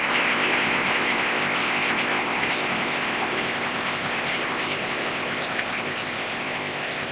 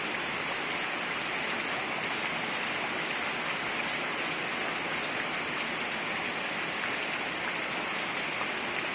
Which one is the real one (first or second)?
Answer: second